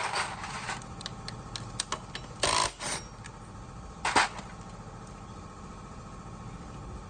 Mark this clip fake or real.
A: real